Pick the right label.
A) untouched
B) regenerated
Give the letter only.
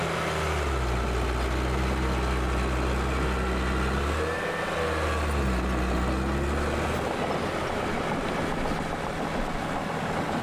A